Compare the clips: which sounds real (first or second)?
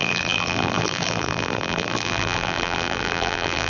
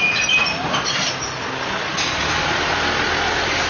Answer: second